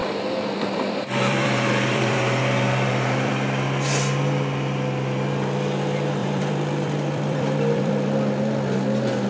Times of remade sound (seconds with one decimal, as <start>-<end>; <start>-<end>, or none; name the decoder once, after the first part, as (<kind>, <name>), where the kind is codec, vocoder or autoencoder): 0.0-3.3 (vocoder, BigVGAN v2); 6.2-7.9